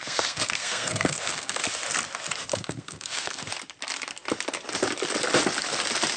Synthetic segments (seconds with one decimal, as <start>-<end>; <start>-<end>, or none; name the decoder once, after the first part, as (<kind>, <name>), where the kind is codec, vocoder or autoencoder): 0.0-1.6 (codec, SNAC); 2.5-3.4